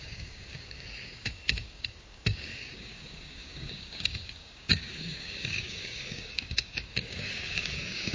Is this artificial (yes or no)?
yes